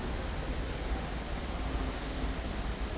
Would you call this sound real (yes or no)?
yes